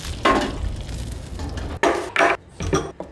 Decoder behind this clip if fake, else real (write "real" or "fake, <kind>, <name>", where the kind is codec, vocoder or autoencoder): real